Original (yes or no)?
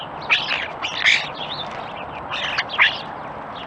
yes